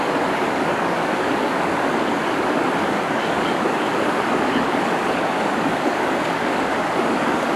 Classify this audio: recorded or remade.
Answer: remade